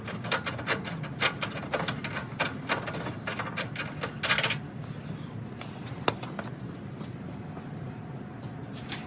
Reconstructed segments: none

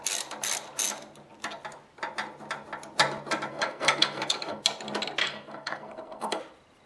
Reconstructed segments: 3.5-4.6 (codec, SNAC); 5.2-6.4